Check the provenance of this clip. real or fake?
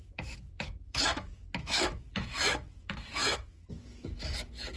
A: fake